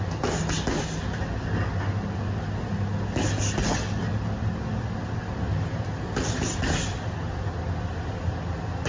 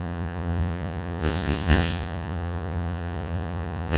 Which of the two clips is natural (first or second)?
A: first